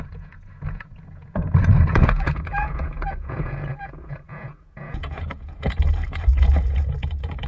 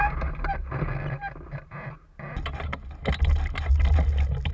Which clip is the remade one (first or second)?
first